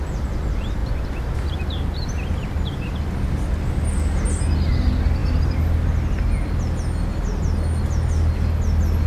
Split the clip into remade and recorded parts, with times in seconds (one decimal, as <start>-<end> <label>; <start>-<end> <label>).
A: 0.0-9.1 recorded